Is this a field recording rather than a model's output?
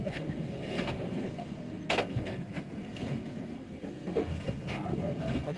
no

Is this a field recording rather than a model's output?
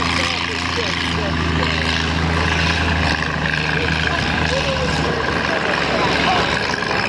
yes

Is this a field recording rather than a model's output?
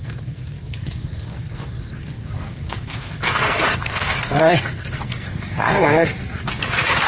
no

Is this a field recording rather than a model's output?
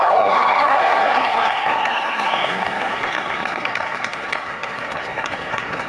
no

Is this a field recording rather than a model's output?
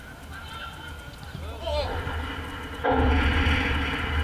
yes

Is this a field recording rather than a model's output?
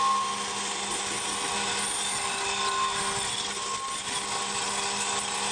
yes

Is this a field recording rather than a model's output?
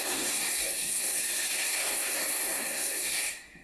no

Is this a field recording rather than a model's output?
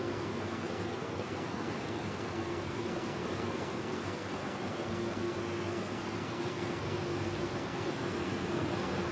no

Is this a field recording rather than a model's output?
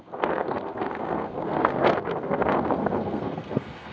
no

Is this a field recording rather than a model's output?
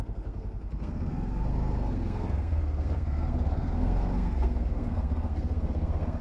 no